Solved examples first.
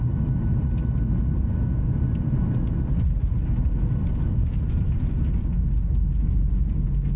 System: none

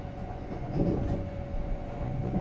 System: vocoder, Vocos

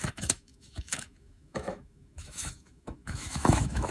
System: autoencoder, DAC-VAE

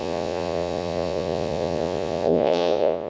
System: vocoder, Vocos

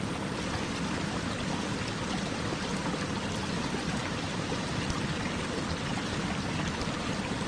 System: none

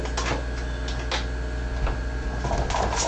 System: none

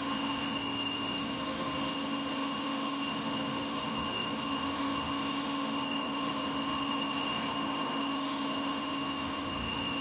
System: autoencoder, DAC-VAE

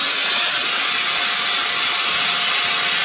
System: none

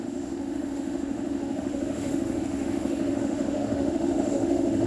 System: autoencoder, DAC-VAE